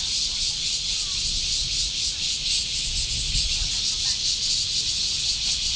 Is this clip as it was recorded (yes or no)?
yes